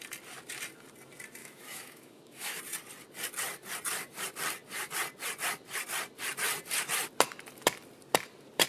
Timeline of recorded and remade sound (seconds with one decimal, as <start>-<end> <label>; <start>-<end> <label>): 0.0-1.4 recorded; 1.4-2.6 remade; 2.6-8.7 recorded